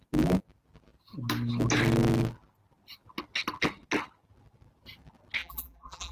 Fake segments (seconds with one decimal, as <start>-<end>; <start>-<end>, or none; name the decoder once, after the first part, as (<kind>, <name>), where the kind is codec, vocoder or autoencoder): 5.4-6.1 (vocoder, BigVGAN v2)